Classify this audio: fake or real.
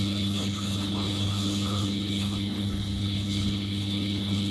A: fake